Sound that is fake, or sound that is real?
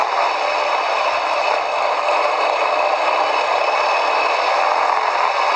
real